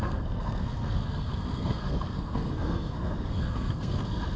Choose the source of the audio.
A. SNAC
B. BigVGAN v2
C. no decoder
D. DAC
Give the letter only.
A